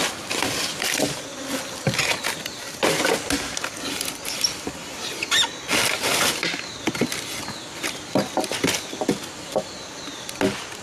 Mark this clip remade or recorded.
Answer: recorded